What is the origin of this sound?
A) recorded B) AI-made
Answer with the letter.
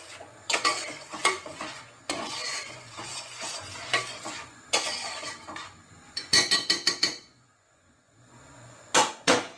B